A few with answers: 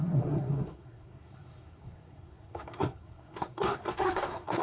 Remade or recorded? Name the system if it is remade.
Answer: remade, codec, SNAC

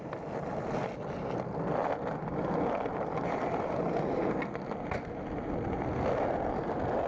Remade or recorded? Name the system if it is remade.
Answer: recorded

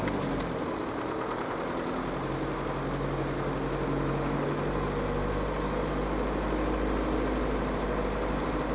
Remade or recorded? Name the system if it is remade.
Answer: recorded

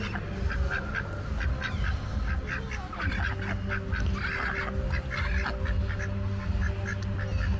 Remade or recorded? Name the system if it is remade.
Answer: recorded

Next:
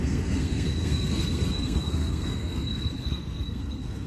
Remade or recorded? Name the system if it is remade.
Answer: remade, codec, SNAC